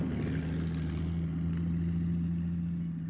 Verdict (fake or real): real